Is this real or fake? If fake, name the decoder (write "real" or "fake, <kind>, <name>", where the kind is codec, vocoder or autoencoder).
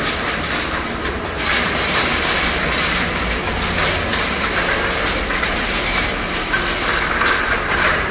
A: fake, vocoder, BigVGAN v2